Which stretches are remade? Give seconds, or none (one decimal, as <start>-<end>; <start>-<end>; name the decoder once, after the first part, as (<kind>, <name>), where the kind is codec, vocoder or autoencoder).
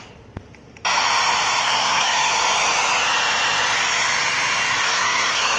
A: 1.6-2.3 (codec, SNAC); 4.8-5.6